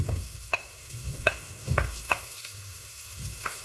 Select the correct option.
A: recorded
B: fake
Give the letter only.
B